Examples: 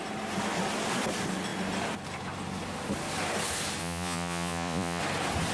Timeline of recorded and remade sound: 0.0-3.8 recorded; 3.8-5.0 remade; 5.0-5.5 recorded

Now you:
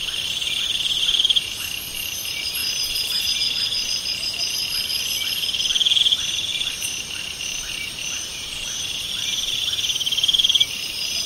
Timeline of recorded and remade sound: 0.0-4.6 remade; 4.6-6.0 recorded; 6.0-11.3 remade

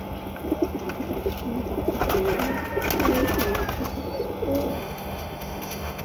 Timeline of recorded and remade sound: 0.0-4.7 recorded; 4.7-6.0 remade

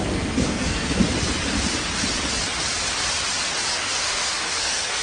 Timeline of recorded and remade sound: 0.0-1.0 remade; 1.0-3.7 recorded; 3.7-5.0 remade

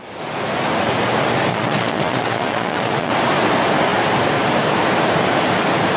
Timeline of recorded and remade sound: 0.0-1.5 recorded; 1.5-3.1 remade; 3.1-6.0 recorded